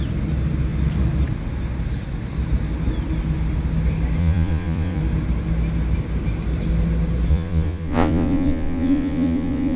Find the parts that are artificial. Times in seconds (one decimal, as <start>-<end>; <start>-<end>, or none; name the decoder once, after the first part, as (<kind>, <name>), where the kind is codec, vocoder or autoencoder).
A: 4.2-5.0 (vocoder, Vocos); 7.3-9.8

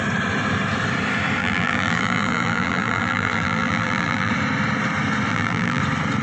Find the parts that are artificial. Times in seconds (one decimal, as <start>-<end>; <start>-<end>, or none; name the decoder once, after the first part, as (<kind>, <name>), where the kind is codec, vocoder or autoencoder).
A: 1.4-4.3 (vocoder, BigVGAN v2); 5.3-5.8

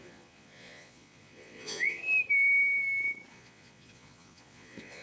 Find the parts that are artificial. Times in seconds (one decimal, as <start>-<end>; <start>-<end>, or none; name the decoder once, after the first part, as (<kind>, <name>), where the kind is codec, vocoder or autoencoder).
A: 0.0-2.0 (vocoder, Vocos); 3.3-5.0

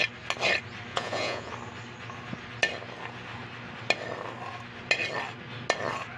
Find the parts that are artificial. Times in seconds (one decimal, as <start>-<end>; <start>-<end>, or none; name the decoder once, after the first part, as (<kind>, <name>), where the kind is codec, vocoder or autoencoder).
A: 0.9-1.5 (vocoder, Vocos)

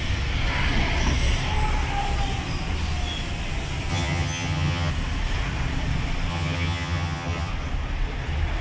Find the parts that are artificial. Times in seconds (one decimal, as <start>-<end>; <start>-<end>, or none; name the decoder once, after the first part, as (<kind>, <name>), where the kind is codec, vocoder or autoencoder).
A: 3.9-4.9 (vocoder, HiFi-GAN); 6.3-7.5

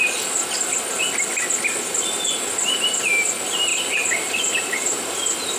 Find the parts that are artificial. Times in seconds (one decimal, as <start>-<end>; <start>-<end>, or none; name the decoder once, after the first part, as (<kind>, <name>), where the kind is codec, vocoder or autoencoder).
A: none

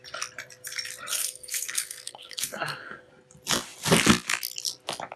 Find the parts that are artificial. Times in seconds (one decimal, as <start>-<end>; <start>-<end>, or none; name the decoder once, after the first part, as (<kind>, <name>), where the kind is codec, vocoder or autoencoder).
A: 1.2-3.1 (codec, SNAC)

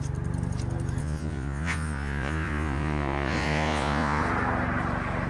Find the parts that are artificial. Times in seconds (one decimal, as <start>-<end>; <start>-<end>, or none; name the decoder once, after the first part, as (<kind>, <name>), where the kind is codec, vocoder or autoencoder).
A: 1.0-4.2 (vocoder, Vocos)